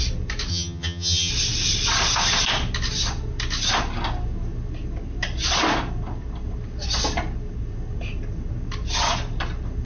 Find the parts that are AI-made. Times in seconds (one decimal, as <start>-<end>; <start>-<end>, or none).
0.5-1.3